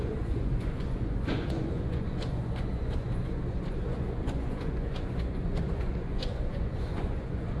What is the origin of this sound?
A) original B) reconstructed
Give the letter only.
B